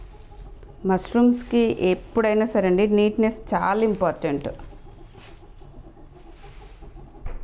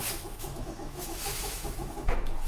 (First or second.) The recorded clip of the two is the first